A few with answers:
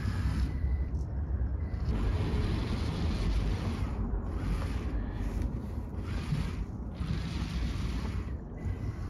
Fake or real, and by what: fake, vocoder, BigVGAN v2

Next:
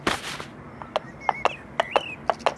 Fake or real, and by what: real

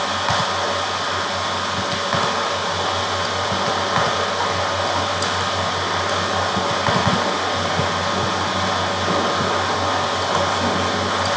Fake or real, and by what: real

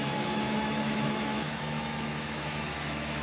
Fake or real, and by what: fake, autoencoder, DAC-VAE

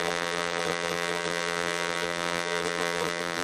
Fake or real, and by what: fake, vocoder, BigVGAN v2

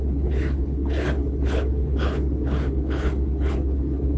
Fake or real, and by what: fake, codec, HILCodec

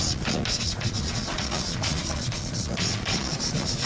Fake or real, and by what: fake, vocoder, Vocos